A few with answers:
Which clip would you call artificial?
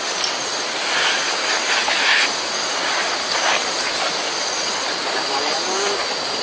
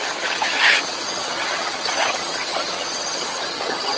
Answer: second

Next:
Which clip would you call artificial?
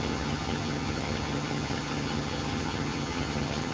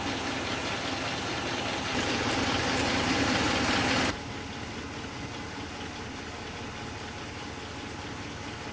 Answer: first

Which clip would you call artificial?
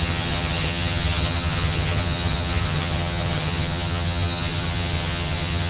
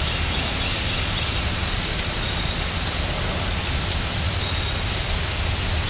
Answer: first